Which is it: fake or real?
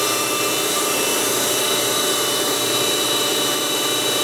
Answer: fake